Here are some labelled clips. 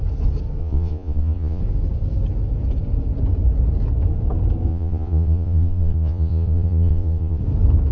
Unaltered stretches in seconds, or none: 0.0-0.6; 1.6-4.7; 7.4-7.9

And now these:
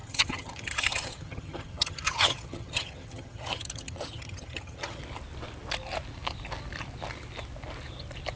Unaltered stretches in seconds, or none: 5.0-8.4

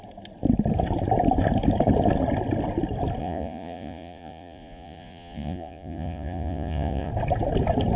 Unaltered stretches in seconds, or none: 0.0-3.2; 7.1-8.0